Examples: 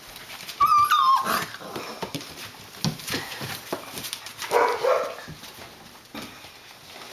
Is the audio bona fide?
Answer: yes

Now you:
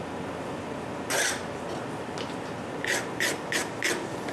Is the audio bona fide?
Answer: yes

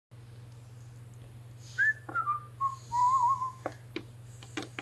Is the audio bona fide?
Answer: yes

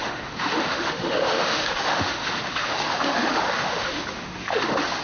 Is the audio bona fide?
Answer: no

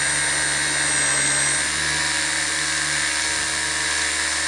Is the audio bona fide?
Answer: yes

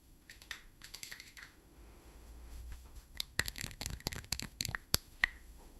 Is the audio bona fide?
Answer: no